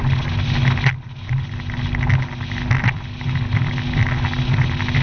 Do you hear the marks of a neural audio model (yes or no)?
no